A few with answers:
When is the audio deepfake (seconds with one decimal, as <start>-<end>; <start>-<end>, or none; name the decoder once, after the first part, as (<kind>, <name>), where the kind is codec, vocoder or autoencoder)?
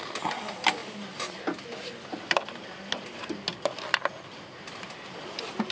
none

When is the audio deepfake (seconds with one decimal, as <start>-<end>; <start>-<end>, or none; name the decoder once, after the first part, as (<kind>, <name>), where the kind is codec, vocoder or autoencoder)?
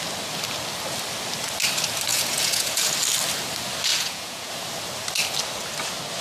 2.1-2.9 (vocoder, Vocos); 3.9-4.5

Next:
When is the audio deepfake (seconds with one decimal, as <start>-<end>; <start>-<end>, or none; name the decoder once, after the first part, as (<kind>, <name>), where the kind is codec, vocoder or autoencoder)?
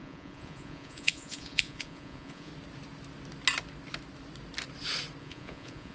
0.0-2.5 (vocoder, Vocos); 5.2-5.9